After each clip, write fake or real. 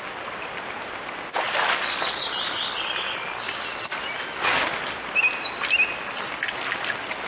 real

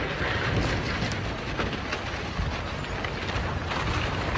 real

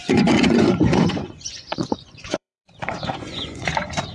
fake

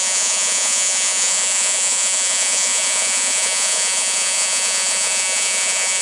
fake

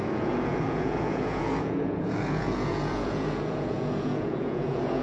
fake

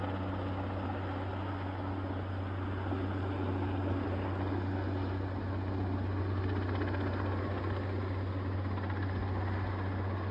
real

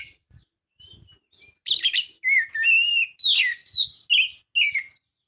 real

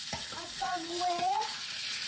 fake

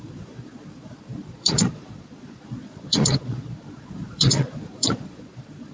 fake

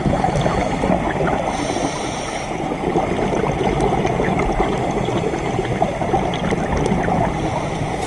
real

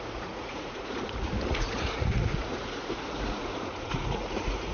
fake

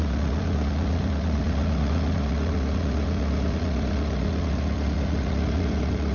fake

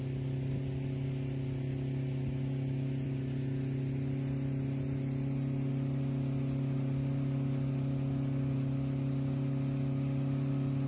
real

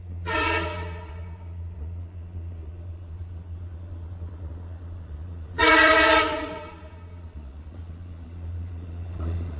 fake